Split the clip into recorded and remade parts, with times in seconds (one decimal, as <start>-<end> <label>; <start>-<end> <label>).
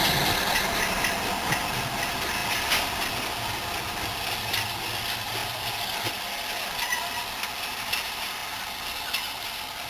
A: 0.0-9.9 recorded